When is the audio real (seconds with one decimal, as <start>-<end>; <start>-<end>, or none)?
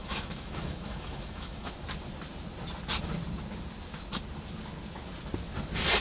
1.7-6.0